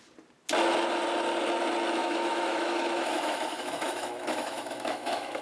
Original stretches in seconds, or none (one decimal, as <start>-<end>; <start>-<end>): 0.0-2.0